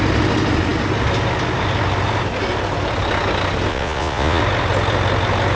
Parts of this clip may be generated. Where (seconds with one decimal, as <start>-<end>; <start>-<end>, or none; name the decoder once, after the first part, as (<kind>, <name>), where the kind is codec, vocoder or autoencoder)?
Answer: 3.7-4.4 (vocoder, Vocos)